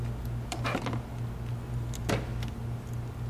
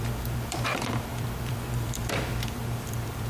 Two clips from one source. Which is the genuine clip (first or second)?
first